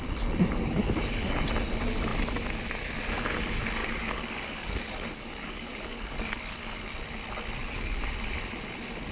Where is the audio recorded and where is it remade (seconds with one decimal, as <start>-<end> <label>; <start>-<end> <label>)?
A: 0.0-3.8 recorded; 3.8-6.9 remade; 6.9-7.6 recorded; 7.6-8.1 remade; 8.1-9.1 recorded